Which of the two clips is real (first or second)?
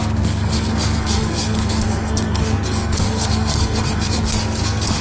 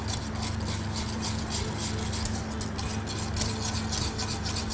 second